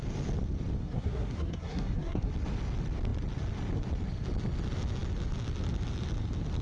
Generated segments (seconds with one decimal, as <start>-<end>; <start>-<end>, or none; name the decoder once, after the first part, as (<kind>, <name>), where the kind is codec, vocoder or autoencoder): 0.8-2.3 (codec, SNAC)